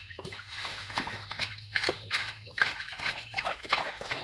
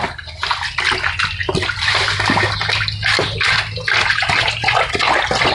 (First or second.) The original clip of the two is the second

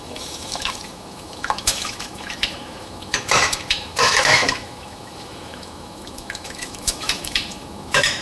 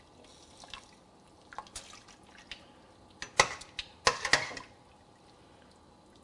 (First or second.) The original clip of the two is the second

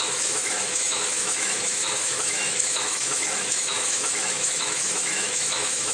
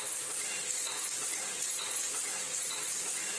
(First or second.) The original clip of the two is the second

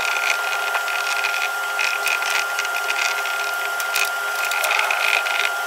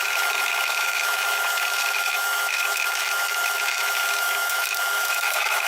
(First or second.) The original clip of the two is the first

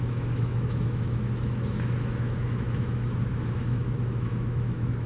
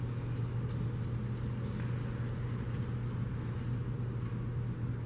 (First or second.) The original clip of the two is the second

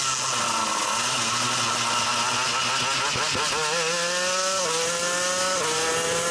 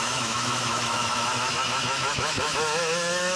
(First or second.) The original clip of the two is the first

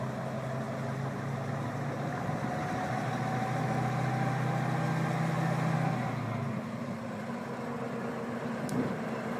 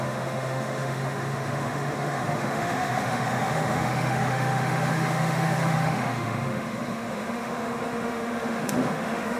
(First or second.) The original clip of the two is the first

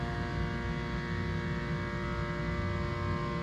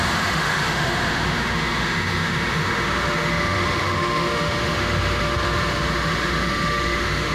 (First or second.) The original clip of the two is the first